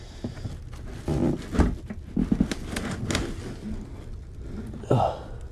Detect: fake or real real